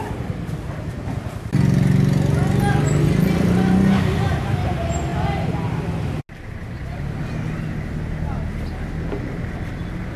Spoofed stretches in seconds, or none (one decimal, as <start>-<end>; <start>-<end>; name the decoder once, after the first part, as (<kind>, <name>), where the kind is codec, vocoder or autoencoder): none